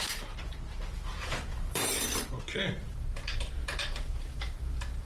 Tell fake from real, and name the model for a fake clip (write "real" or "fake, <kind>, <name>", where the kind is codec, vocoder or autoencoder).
fake, vocoder, BigVGAN v2